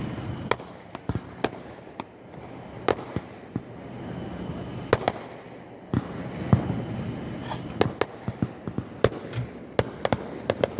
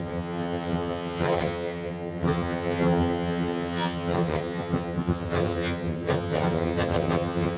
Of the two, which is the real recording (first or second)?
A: first